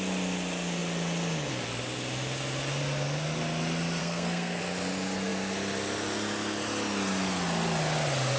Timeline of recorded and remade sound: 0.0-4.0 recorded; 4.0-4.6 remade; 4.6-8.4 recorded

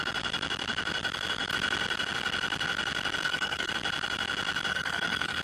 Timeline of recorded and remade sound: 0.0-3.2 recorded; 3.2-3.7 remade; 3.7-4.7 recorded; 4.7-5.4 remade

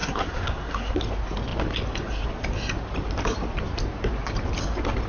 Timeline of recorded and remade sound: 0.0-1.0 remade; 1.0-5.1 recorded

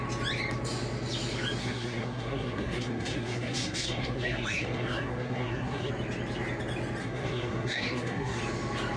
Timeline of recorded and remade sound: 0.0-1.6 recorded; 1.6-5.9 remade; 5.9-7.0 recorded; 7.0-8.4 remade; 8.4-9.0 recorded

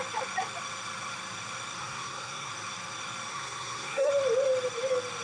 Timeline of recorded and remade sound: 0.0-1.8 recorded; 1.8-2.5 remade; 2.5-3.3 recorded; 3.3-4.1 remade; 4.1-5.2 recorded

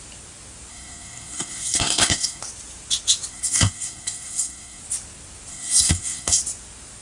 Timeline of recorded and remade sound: 0.0-0.7 recorded; 0.7-2.4 remade; 2.4-3.3 recorded; 3.3-4.8 remade; 4.8-5.5 recorded; 5.5-6.4 remade; 6.4-7.0 recorded